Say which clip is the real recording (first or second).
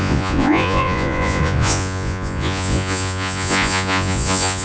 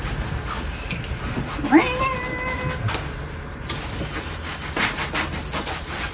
second